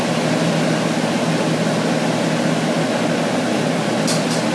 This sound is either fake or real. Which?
real